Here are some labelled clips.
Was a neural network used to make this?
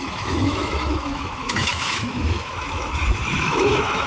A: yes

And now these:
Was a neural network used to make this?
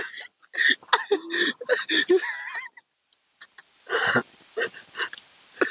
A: no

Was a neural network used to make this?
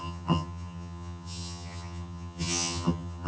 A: yes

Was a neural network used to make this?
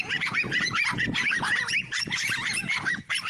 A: yes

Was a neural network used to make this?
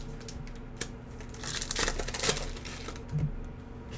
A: no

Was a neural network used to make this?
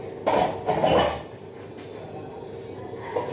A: no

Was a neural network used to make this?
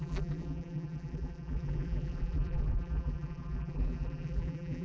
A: yes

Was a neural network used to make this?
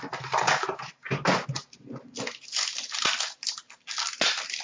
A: no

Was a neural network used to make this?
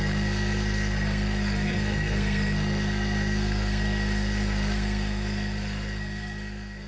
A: yes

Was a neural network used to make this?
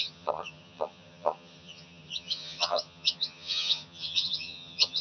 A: yes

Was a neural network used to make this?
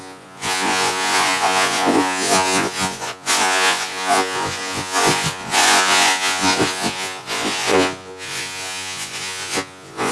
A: yes